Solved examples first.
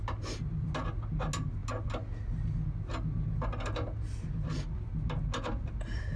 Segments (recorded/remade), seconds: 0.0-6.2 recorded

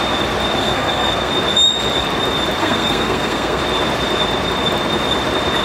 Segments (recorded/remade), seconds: 0.0-0.6 recorded; 0.6-1.3 remade; 1.3-2.6 recorded; 2.6-3.6 remade; 3.6-5.6 recorded

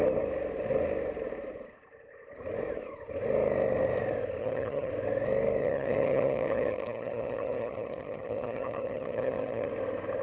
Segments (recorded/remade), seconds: 0.0-4.4 recorded; 4.4-4.9 remade; 4.9-5.6 recorded; 5.6-9.7 remade; 9.7-10.2 recorded